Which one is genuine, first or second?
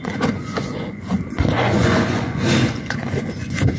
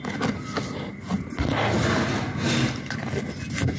second